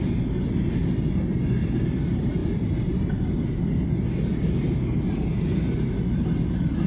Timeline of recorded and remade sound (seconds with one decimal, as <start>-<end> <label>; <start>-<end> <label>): 0.0-2.4 recorded; 2.4-3.9 remade; 3.9-6.9 recorded